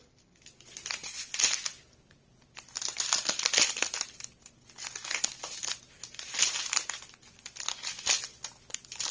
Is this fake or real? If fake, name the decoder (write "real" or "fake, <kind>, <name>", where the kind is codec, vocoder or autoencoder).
real